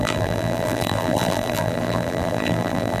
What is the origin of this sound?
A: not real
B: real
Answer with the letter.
A